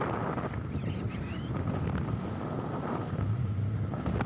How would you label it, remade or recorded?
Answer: recorded